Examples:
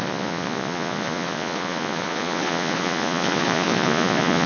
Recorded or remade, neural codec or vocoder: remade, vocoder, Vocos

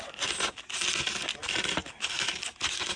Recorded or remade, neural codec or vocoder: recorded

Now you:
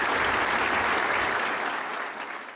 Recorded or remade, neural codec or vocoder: recorded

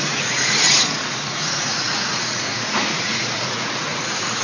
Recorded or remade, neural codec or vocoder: remade, vocoder, Vocos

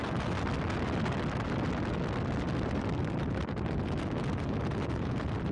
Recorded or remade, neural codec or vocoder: recorded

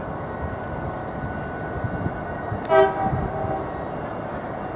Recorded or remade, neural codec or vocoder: recorded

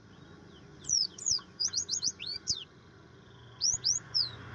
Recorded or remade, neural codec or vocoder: remade, vocoder, Vocos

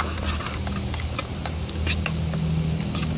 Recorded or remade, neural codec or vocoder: recorded